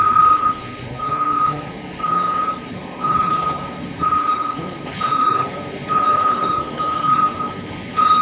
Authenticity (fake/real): fake